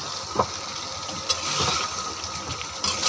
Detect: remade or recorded recorded